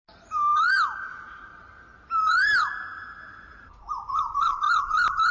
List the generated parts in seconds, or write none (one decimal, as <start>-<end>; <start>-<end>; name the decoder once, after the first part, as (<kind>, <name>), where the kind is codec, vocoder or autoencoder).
none